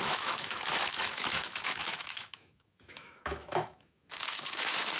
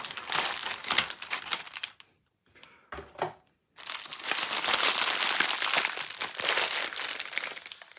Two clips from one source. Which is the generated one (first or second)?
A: first